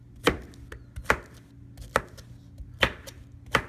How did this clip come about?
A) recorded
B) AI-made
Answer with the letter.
A